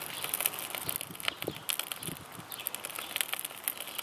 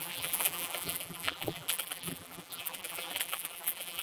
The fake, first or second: second